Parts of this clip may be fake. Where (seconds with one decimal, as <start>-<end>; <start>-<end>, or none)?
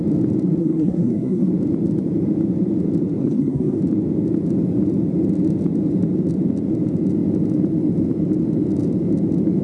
0.6-1.5; 3.2-3.8